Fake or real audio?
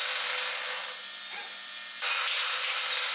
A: real